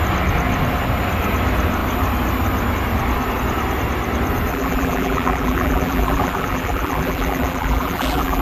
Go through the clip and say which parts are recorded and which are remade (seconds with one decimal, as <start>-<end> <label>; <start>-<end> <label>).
0.0-4.5 recorded; 4.5-8.4 remade